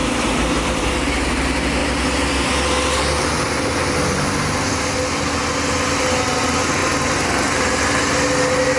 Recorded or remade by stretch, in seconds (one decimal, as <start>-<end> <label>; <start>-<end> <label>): 0.0-0.9 remade; 0.9-8.8 recorded